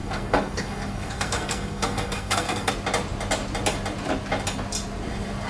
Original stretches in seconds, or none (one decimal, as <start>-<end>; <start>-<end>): 2.7-5.5

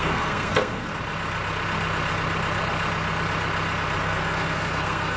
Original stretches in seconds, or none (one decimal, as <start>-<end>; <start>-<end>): 0.9-4.0

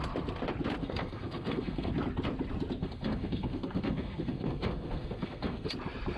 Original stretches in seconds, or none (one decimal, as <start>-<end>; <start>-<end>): 0.0-0.8; 1.9-2.8; 5.7-6.2

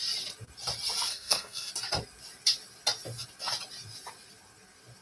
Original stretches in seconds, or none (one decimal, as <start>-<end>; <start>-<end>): 0.0-1.1; 1.7-5.0